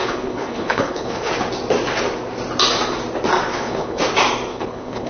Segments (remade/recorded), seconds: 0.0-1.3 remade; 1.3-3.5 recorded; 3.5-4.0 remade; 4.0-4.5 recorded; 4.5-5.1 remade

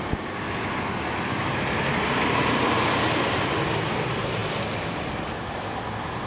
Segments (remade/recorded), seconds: 0.0-4.4 recorded; 4.4-5.2 remade; 5.2-6.3 recorded

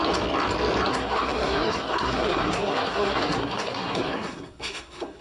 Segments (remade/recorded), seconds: 0.0-0.9 recorded; 0.9-5.2 remade

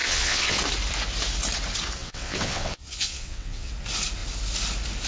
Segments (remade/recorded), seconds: 0.0-0.6 remade; 0.6-2.0 recorded; 2.0-3.7 remade; 3.7-5.1 recorded

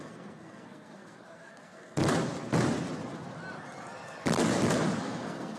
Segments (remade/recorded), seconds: 0.0-2.0 remade; 2.0-5.0 recorded; 5.0-5.6 remade

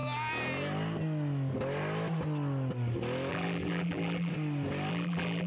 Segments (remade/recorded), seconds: 0.0-3.3 recorded; 3.3-4.3 remade; 4.3-4.9 recorded; 4.9-5.5 remade

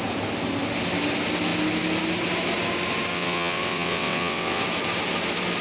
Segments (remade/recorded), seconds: 0.0-3.1 recorded; 3.1-4.6 remade; 4.6-5.6 recorded

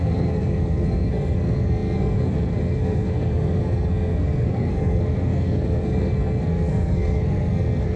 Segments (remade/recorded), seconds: 0.0-8.0 remade